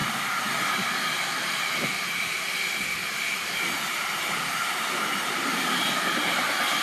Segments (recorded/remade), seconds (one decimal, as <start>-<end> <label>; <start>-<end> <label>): 0.0-6.8 recorded